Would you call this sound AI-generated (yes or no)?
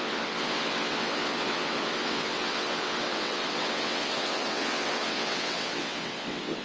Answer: yes